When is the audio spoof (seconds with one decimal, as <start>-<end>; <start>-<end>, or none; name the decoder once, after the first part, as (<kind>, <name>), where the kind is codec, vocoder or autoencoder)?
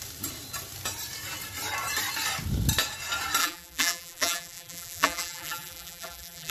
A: 3.4-6.5 (vocoder, BigVGAN v2)